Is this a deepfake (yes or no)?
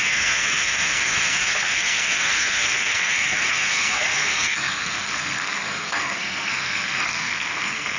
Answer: yes